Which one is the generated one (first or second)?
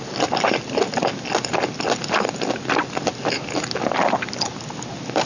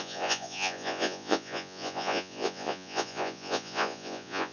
second